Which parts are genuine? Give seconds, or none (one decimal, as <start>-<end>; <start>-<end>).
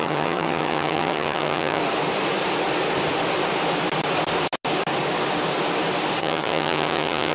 1.8-6.2